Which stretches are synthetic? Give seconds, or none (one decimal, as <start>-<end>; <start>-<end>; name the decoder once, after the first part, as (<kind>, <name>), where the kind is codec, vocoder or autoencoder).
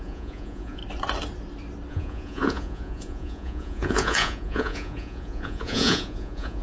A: 0.0-0.8 (vocoder, Vocos); 1.9-6.6